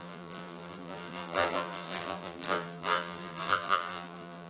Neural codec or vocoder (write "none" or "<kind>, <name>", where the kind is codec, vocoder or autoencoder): vocoder, BigVGAN v2